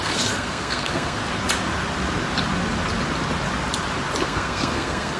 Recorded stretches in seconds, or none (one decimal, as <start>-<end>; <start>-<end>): 1.2-4.2